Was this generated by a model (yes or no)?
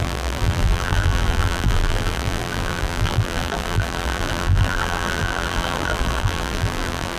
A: yes